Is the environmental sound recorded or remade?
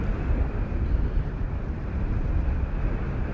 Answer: recorded